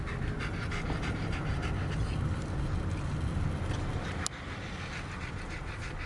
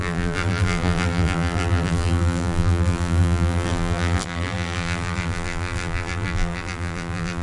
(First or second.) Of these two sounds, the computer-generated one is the second